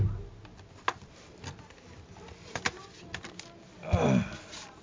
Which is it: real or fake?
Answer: real